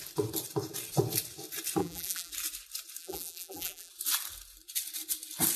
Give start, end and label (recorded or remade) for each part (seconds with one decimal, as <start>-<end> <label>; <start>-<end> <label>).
0.0-1.8 recorded; 1.8-2.3 remade; 2.3-3.0 recorded; 3.0-3.9 remade; 3.9-5.6 recorded